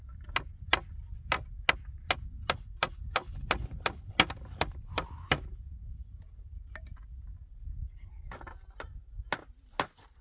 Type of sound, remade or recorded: recorded